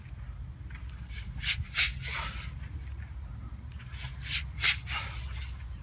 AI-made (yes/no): no